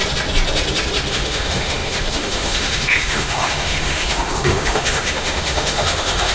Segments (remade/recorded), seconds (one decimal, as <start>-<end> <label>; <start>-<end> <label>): 0.0-1.1 recorded; 1.1-6.3 remade